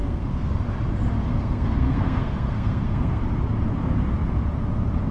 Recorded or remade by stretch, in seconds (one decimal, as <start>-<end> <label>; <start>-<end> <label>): 0.0-0.5 remade; 0.5-1.3 recorded; 1.3-3.2 remade; 3.2-5.1 recorded